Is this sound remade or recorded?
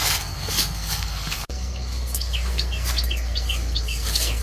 remade